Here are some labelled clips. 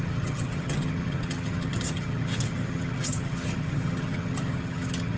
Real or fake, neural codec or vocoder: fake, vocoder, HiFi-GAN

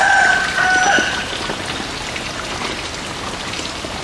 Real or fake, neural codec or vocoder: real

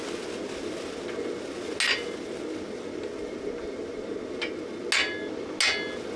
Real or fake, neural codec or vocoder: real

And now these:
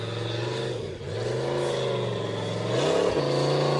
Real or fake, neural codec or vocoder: real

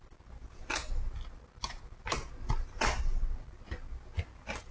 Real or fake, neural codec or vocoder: real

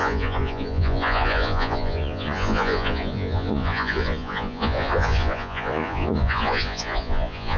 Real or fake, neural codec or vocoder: fake, vocoder, Vocos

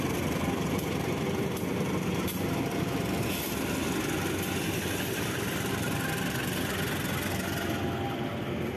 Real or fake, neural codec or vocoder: real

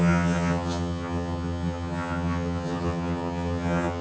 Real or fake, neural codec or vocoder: fake, vocoder, HiFi-GAN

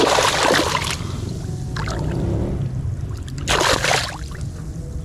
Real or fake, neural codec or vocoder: real